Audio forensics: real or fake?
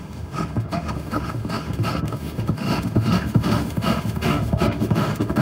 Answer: fake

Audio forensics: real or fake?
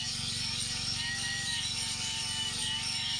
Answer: fake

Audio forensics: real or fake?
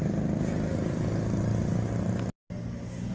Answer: real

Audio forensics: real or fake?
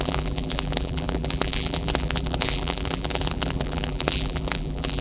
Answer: fake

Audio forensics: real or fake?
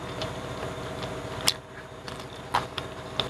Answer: real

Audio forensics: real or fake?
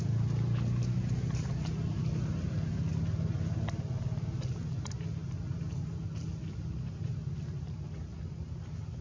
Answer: real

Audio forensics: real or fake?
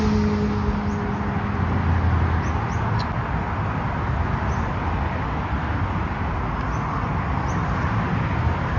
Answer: real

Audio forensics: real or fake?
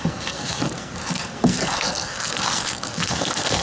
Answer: fake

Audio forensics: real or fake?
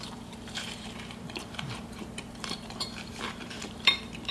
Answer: fake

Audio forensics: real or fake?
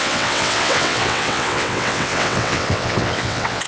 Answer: fake